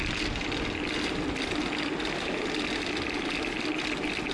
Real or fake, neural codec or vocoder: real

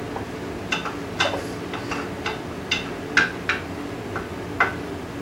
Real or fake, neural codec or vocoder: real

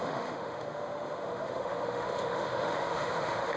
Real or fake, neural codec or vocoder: fake, autoencoder, DAC-VAE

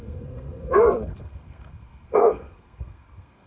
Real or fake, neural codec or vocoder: fake, codec, SNAC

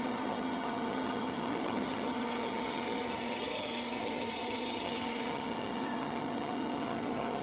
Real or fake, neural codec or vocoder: fake, vocoder, HiFi-GAN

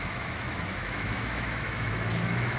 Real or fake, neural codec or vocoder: fake, autoencoder, DAC-VAE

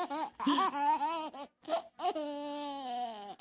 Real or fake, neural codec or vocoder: real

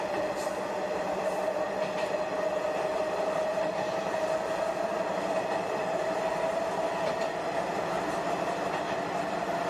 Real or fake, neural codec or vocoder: fake, vocoder, BigVGAN v2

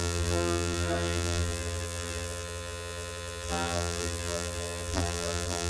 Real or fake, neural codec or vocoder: fake, vocoder, BigVGAN v2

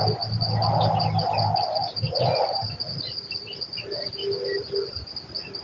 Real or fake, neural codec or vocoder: real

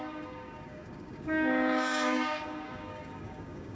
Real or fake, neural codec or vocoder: fake, codec, DAC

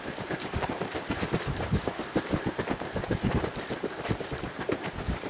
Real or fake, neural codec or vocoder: fake, vocoder, BigVGAN v2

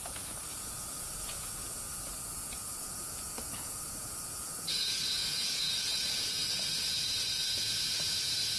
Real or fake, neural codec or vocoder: fake, vocoder, Vocos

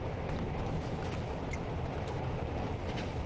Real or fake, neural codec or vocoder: real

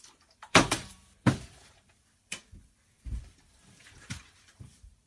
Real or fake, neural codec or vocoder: fake, vocoder, BigVGAN v2